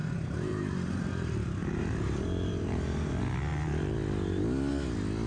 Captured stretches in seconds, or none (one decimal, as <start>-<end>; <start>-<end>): 1.1-1.6; 3.1-5.3